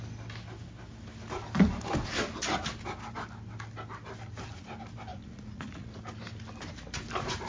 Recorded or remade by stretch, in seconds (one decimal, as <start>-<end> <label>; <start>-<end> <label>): 0.0-5.1 recorded; 5.1-6.0 remade; 6.0-7.5 recorded